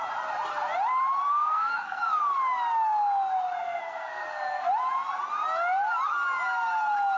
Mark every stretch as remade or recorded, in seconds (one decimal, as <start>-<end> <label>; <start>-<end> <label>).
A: 0.0-1.3 recorded; 1.3-2.2 remade; 2.2-3.6 recorded; 3.6-4.7 remade; 4.7-7.2 recorded